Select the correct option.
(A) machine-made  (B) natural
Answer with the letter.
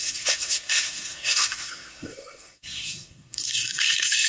A